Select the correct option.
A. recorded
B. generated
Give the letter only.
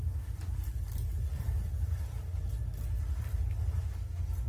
A